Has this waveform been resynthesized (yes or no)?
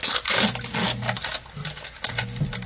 no